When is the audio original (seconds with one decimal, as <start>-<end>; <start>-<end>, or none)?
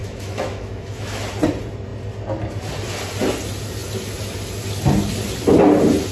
1.2-6.1